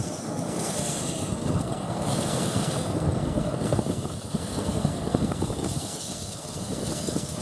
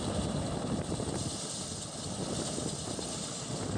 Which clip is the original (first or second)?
second